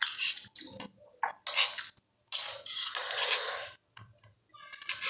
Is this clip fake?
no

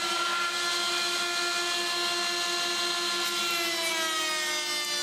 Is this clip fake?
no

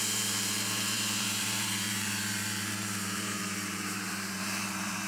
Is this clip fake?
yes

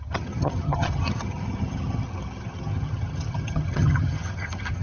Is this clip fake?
yes